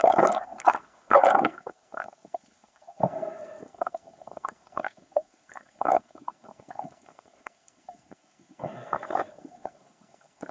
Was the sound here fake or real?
fake